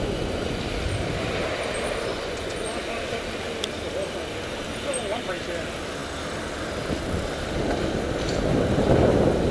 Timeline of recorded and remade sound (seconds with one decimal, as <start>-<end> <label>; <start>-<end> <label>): 0.0-0.6 remade; 0.6-2.1 recorded; 2.1-2.7 remade; 2.7-9.5 recorded